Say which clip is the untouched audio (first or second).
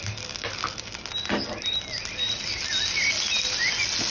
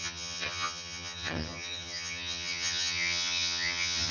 first